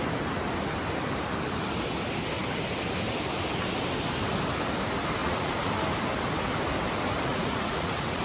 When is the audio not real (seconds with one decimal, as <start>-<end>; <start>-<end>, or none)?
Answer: 5.2-5.7; 7.3-8.2

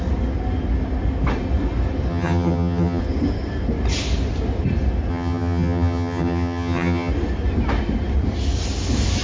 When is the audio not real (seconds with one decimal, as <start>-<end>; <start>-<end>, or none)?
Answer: 2.1-3.0; 5.1-7.1

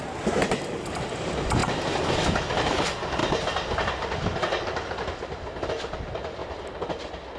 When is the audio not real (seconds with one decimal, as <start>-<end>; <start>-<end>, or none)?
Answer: 3.2-5.7; 6.4-6.9

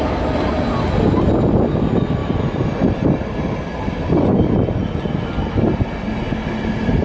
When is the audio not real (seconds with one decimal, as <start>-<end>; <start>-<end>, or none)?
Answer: 2.2-5.5

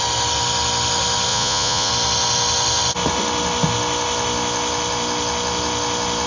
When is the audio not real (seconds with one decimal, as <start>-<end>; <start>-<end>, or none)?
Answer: 1.3-1.9

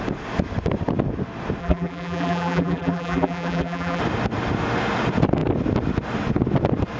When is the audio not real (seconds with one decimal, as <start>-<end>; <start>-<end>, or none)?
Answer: 1.6-4.0

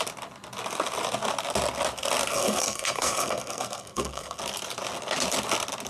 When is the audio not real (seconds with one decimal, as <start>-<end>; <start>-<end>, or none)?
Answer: 2.3-4.4